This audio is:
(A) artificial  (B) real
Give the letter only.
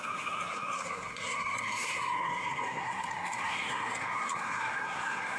A